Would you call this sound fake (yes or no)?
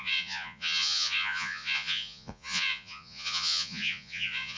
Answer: yes